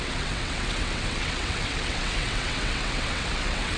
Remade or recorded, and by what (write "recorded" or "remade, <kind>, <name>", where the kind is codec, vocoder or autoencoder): remade, vocoder, WaveNeXt